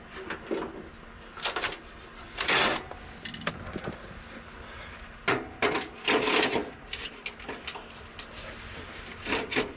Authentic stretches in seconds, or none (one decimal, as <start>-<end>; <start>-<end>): 0.0-9.8